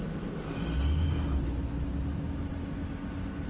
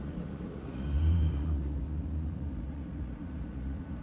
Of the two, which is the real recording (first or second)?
first